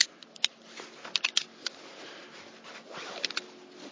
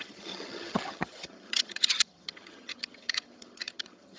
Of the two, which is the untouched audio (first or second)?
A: first